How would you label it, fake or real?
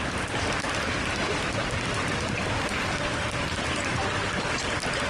real